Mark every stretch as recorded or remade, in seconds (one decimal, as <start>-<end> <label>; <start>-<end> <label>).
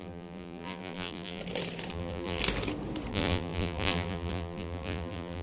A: 0.0-1.4 remade; 1.4-1.9 recorded; 1.9-2.4 remade; 2.4-3.1 recorded; 3.1-5.4 remade